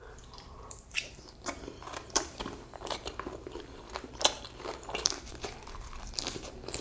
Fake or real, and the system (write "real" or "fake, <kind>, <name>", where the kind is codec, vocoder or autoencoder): fake, vocoder, BigVGAN v2